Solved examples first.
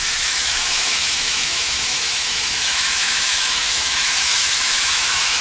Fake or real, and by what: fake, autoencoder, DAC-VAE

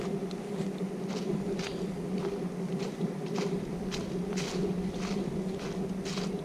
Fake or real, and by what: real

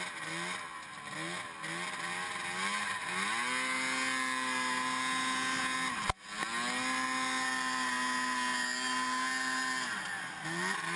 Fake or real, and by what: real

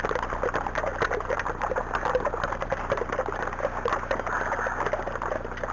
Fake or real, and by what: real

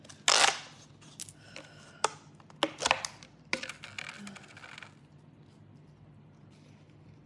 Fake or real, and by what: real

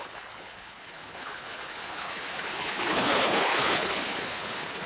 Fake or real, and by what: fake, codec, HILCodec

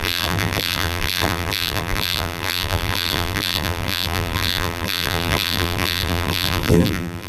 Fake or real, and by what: fake, vocoder, BigVGAN v2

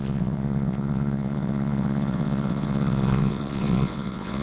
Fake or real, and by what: fake, vocoder, WaveNeXt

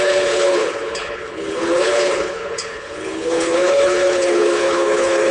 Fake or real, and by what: fake, codec, HILCodec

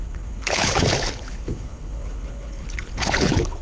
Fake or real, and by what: fake, codec, HILCodec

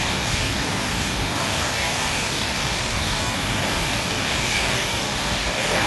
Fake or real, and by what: fake, codec, DAC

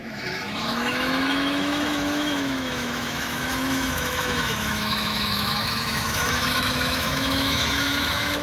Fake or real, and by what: fake, autoencoder, DAC-VAE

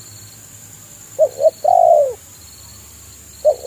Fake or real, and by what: real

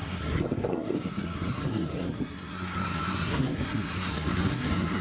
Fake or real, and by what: fake, codec, SNAC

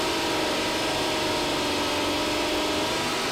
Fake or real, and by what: real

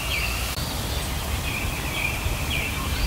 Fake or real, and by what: fake, vocoder, BigVGAN v2